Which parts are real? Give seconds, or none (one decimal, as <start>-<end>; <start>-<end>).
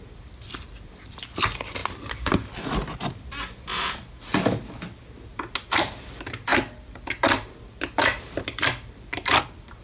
5.3-5.8; 6.5-8.2